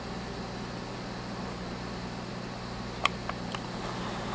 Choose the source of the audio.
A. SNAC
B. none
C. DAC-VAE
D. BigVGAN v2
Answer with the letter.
B